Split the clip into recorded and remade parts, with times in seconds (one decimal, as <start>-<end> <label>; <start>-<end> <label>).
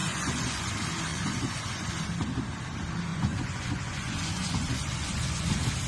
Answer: 0.0-0.7 remade; 0.7-1.1 recorded; 1.1-1.9 remade; 1.9-3.1 recorded; 3.1-5.5 remade; 5.5-5.9 recorded